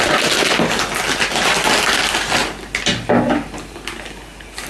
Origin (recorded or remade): recorded